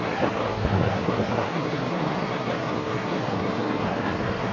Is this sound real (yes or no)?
no